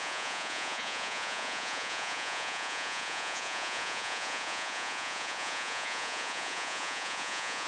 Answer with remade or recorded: remade